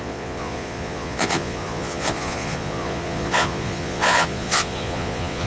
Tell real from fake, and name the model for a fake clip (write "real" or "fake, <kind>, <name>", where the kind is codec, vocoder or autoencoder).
fake, vocoder, Vocos